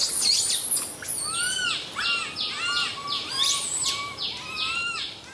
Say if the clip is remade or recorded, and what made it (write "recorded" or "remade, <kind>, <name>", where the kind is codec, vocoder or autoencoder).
recorded